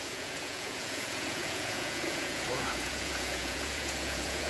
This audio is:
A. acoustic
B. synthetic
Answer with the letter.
B